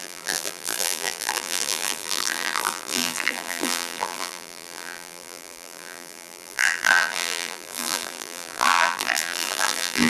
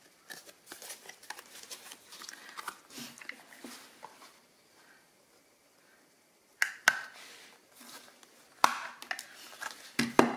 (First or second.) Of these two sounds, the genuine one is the second